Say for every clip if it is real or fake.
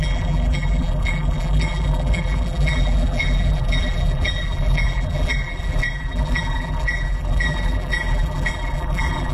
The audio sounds fake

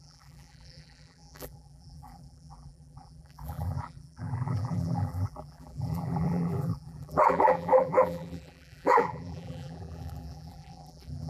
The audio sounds fake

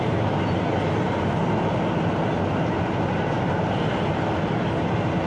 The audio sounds real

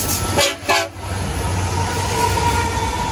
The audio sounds real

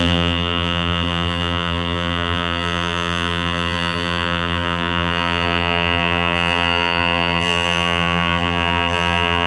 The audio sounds fake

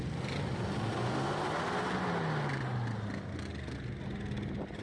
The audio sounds real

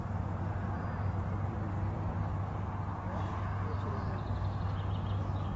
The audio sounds real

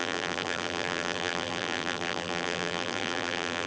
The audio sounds fake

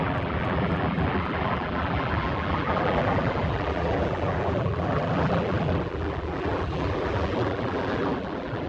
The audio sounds fake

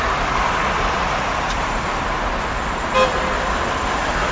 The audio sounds fake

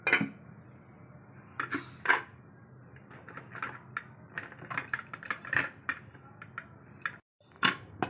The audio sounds real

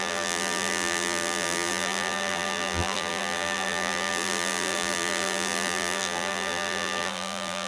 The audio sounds fake